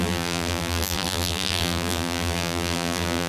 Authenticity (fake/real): fake